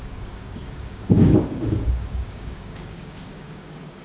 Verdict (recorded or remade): remade